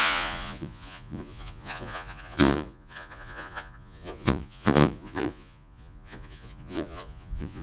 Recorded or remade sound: remade